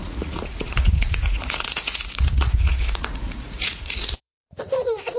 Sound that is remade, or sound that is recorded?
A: remade